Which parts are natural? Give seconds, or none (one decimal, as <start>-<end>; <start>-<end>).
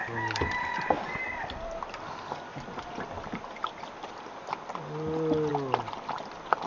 0.0-6.7